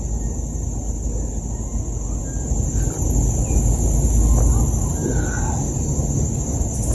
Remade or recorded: recorded